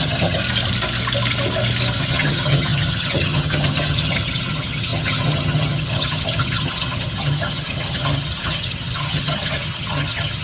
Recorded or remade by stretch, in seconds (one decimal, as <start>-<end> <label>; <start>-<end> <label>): 0.0-0.4 remade; 0.4-2.0 recorded; 2.0-10.4 remade